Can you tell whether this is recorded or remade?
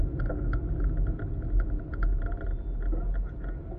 recorded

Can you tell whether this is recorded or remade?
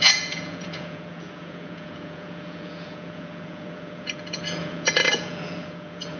remade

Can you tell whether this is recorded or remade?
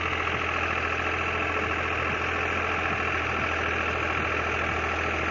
recorded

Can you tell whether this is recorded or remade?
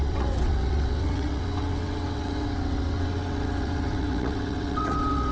remade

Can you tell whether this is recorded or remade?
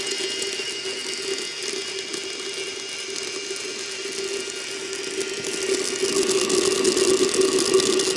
recorded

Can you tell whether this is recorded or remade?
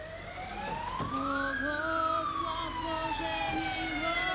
recorded